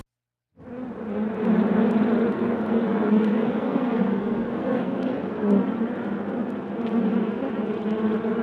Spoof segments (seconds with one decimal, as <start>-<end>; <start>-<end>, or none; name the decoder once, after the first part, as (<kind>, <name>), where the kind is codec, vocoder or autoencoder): 2.3-5.5 (codec, SNAC)